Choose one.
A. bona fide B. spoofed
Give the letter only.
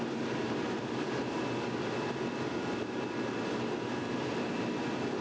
A